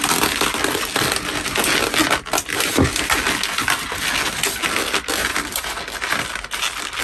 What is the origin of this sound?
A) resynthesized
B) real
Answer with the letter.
B